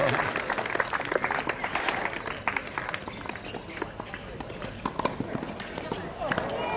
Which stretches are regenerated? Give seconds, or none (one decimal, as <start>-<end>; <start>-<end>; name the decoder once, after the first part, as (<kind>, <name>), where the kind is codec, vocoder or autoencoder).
none